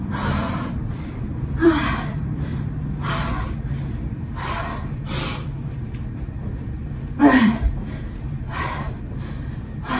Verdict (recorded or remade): remade